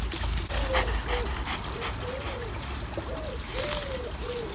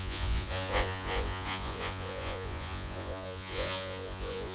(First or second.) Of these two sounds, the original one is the first